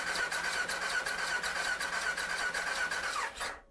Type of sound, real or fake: real